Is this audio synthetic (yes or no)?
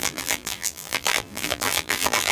yes